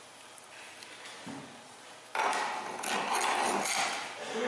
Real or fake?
real